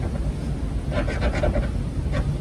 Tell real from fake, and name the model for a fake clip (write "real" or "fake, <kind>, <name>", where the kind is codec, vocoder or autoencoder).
real